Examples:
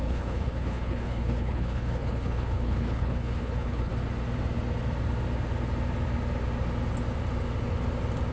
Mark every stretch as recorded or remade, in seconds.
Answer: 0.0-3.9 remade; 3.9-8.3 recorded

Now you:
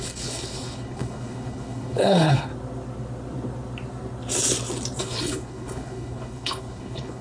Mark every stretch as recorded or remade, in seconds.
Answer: 0.0-2.5 remade; 2.5-5.0 recorded; 5.0-7.2 remade

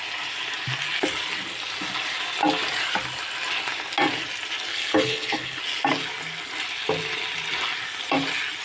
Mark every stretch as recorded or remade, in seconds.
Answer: 0.0-4.7 recorded; 4.7-5.6 remade; 5.6-8.6 recorded